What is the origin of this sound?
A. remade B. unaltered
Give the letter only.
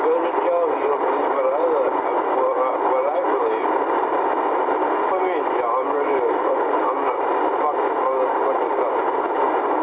B